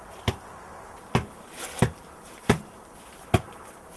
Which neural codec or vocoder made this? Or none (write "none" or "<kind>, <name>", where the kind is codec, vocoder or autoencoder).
none